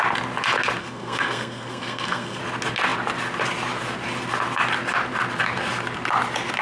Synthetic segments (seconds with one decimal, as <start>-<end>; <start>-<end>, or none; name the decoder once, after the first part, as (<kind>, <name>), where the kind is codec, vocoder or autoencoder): 0.8-2.4 (codec, SNAC)